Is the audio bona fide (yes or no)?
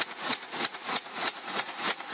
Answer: no